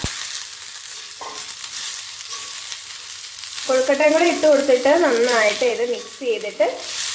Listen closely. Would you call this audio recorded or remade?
remade